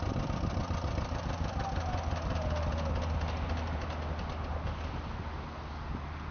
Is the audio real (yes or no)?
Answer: yes